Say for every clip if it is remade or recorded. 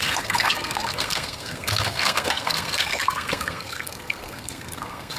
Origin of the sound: remade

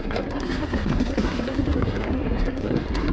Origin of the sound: remade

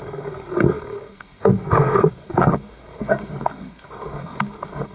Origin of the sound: remade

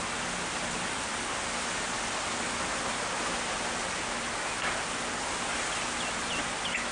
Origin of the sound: recorded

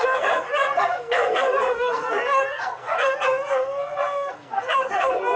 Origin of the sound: remade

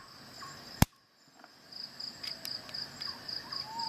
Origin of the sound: recorded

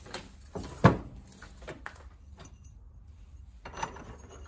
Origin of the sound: recorded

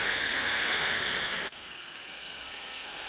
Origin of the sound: remade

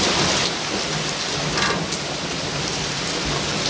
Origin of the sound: recorded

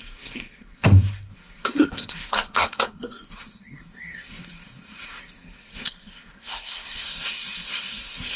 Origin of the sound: remade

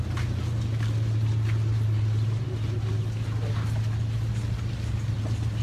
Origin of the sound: recorded